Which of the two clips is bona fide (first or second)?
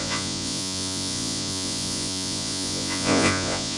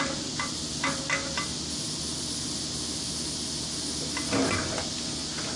second